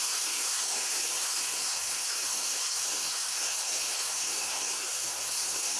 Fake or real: fake